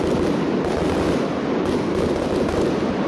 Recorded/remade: recorded